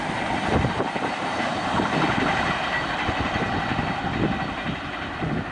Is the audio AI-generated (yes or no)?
no